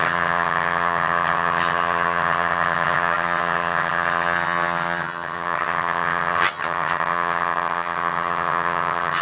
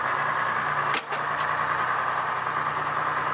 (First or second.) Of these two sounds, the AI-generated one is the first